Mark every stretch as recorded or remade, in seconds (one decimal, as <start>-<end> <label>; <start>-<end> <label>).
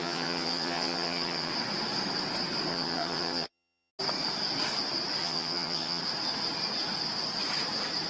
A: 0.0-1.5 remade; 1.5-2.7 recorded; 2.7-3.9 remade; 3.9-5.2 recorded; 5.2-6.0 remade; 6.0-8.1 recorded